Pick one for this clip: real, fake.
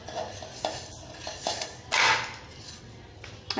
real